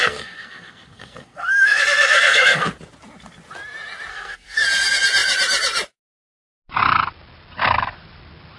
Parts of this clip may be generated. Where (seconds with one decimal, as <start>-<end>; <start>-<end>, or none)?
0.0-2.7; 4.1-4.6